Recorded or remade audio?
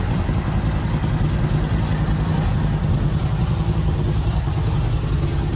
recorded